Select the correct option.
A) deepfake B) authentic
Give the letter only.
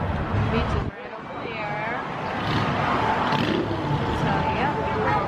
B